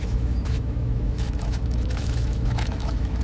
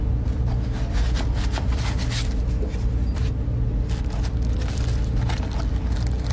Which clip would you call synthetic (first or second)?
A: first